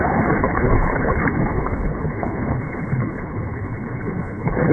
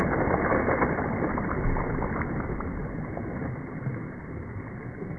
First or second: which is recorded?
second